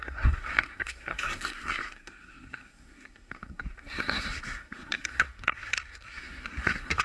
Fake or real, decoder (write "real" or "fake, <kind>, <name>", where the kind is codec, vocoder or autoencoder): fake, codec, SNAC